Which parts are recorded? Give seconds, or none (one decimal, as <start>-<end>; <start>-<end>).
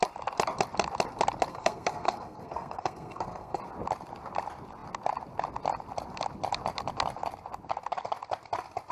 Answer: 0.0-1.5; 3.6-8.9